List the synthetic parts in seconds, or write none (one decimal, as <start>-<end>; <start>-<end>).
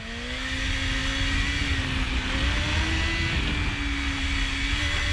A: none